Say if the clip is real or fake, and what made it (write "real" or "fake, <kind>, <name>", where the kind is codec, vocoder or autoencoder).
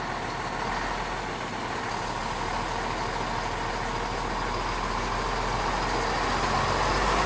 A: real